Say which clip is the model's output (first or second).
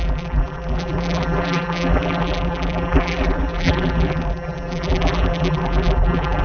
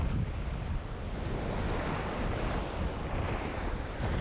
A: first